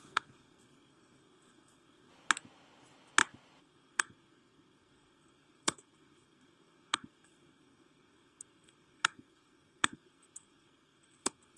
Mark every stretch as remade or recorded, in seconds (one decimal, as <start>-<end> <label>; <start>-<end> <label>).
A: 0.0-2.1 remade; 2.1-3.6 recorded; 3.6-11.6 remade